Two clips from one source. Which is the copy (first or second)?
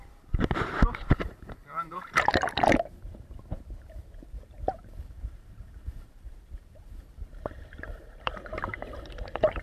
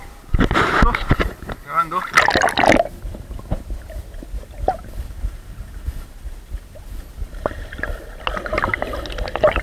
first